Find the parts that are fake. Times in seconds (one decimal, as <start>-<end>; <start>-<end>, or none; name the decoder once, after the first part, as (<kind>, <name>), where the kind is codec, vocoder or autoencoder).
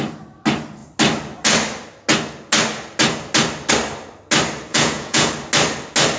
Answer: 4.7-5.3 (vocoder, Vocos)